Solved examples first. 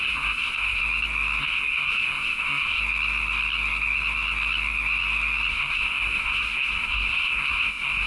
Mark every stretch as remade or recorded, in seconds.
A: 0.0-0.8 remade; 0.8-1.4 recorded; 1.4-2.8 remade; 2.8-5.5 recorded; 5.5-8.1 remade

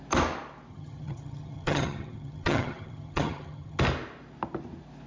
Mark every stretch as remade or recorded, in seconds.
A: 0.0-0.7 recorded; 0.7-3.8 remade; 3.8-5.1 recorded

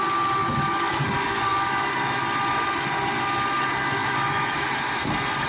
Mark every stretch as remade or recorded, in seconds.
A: 0.0-4.0 recorded; 4.0-5.0 remade; 5.0-5.5 recorded

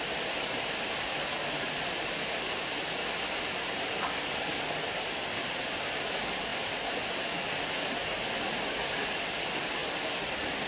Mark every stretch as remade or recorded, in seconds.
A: 0.0-10.7 recorded